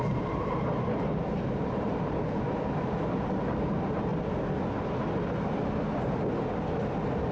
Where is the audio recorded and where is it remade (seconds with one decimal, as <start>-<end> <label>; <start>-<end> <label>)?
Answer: 0.0-4.1 remade; 4.1-7.3 recorded